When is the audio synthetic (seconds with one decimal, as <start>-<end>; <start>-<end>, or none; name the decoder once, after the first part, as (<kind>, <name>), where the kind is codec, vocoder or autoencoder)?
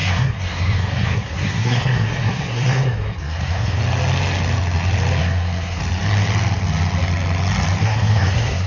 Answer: 0.0-3.8 (codec, SNAC); 5.2-5.8; 7.8-8.7